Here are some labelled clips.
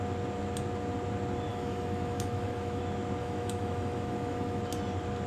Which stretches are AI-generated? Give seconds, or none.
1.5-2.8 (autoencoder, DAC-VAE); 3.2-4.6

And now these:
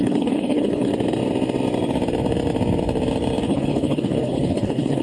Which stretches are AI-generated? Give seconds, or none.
0.0-0.9 (codec, HILCodec); 3.4-5.0

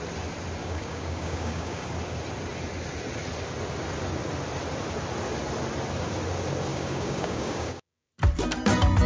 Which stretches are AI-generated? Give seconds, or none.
0.6-1.9 (codec, DAC); 6.7-8.1

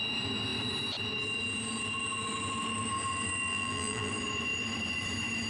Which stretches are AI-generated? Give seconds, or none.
3.5-4.1 (vocoder, BigVGAN v2)

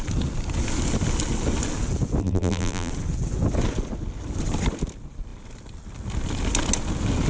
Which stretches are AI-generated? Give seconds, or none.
2.2-2.9 (vocoder, BigVGAN v2)

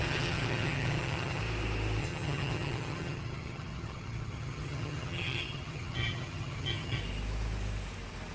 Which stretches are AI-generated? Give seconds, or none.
0.0-1.4 (vocoder, HiFi-GAN); 2.0-7.0

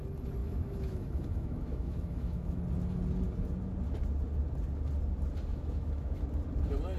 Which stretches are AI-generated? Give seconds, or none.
0.4-2.6 (autoencoder, DAC-VAE); 5.5-6.2

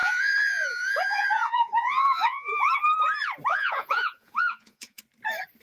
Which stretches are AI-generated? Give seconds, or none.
0.0-2.7 (vocoder, Vocos); 3.5-5.0